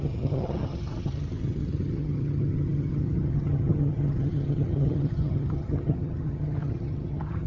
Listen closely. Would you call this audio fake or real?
fake